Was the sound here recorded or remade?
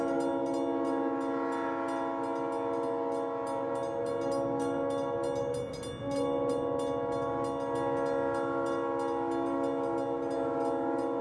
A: recorded